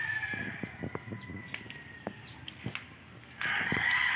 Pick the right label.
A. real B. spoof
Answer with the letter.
A